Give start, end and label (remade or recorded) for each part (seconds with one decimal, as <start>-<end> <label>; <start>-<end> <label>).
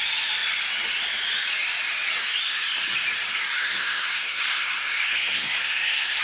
0.0-3.6 recorded; 3.6-6.2 remade